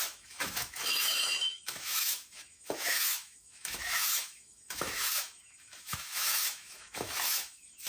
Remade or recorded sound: remade